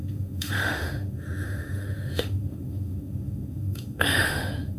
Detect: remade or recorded remade